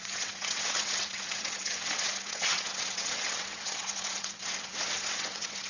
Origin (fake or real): fake